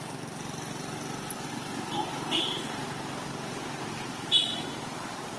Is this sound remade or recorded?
recorded